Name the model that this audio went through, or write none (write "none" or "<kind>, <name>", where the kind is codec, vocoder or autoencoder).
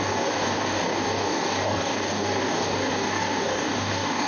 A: codec, DAC